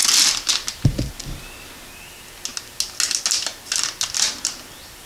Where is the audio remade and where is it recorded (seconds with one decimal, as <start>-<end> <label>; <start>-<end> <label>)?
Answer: 0.0-5.1 recorded